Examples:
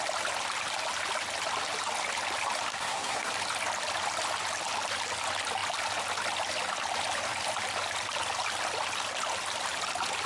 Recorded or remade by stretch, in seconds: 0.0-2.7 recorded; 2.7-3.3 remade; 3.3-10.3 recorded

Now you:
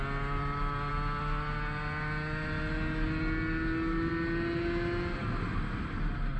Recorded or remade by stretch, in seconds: 0.0-6.4 recorded